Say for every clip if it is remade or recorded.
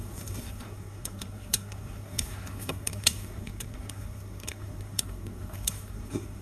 remade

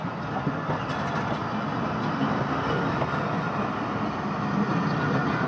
recorded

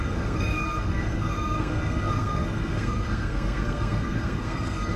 remade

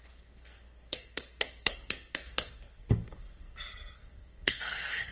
remade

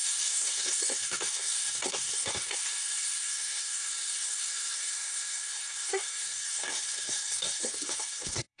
remade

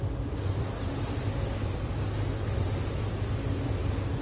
recorded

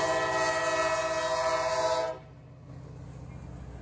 recorded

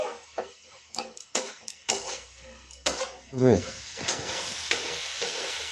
remade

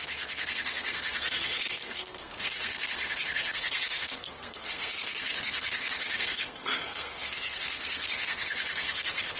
remade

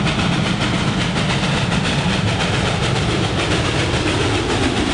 recorded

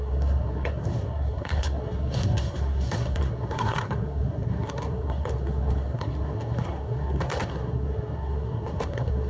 remade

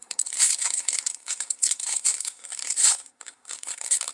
remade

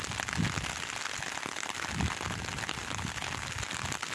recorded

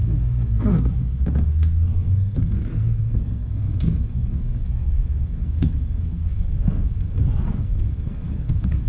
remade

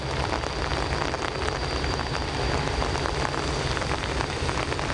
recorded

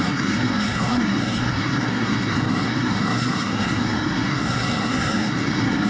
remade